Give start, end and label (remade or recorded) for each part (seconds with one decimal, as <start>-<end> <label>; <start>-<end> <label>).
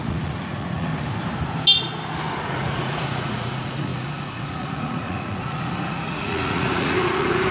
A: 0.0-0.9 remade; 0.9-2.4 recorded; 2.4-7.5 remade